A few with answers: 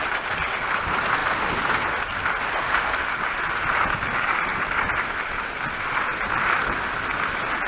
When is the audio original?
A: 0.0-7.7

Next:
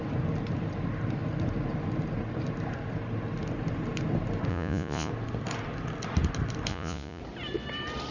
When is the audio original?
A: 0.0-4.5; 5.1-6.7; 7.2-8.1

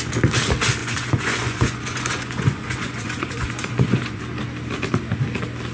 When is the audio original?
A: 0.0-0.8; 4.2-5.7